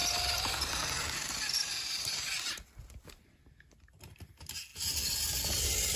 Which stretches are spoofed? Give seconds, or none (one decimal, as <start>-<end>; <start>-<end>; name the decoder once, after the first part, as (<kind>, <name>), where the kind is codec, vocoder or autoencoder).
none